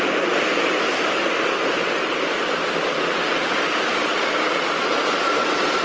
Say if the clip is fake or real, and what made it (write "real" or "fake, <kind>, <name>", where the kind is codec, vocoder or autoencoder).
real